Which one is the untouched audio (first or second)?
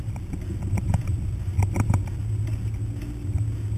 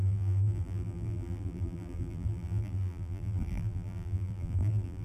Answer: first